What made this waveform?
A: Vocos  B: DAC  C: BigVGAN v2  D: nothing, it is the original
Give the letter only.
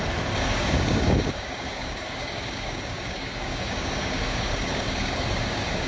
B